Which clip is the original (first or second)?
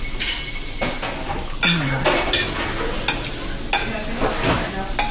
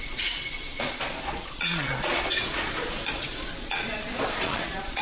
first